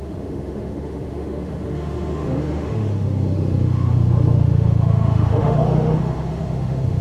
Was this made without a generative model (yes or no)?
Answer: no